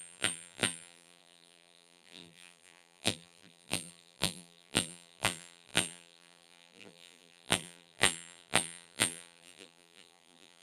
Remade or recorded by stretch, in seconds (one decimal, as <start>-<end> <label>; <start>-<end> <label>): 0.0-10.6 remade